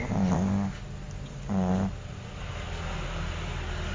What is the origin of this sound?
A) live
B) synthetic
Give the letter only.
A